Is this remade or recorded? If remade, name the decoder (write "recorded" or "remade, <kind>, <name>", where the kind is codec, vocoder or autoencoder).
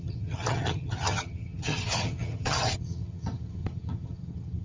remade, vocoder, HiFi-GAN